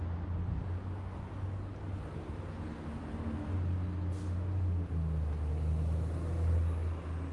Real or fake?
real